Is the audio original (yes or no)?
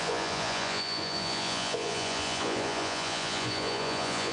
no